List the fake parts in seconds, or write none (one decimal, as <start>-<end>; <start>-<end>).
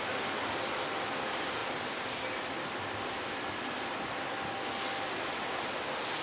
none